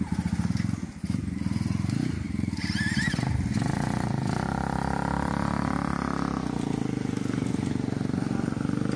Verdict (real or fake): real